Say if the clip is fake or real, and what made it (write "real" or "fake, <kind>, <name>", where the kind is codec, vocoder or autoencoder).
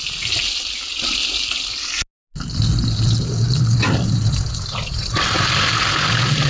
real